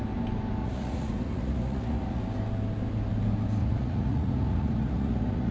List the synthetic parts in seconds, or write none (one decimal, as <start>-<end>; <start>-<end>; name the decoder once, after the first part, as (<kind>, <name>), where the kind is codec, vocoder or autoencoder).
0.6-2.2 (vocoder, Vocos); 3.6-5.5